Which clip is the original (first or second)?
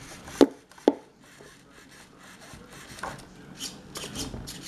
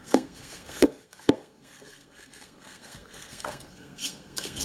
first